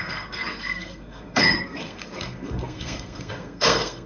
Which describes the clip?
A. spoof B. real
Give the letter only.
A